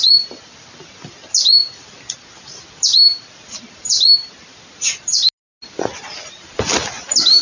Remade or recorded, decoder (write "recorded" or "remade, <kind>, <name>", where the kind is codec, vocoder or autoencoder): recorded